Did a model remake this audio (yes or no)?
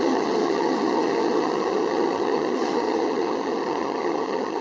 yes